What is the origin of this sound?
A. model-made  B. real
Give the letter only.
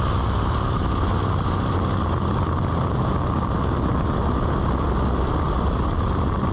B